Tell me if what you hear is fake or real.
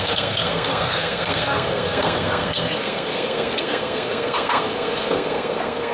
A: fake